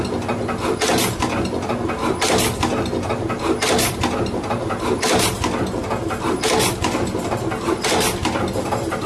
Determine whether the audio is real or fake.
real